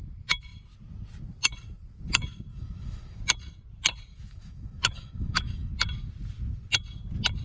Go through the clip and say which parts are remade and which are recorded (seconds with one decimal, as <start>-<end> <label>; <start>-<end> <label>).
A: 0.0-2.5 recorded; 2.5-3.2 remade; 3.2-4.1 recorded; 4.1-5.7 remade; 5.7-7.4 recorded